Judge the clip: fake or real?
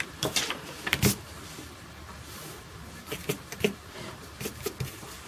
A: fake